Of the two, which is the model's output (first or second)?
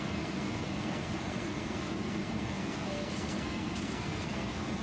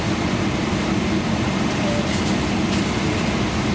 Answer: first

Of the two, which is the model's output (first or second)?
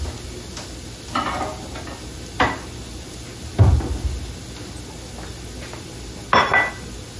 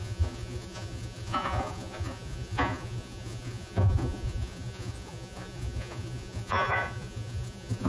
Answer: second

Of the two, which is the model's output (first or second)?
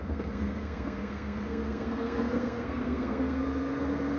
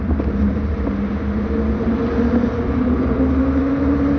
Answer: first